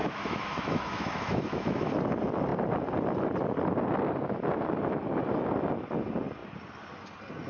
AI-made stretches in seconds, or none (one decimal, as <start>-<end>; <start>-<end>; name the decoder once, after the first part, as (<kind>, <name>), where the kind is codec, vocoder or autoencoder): 0.0-1.9 (autoencoder, DAC-VAE)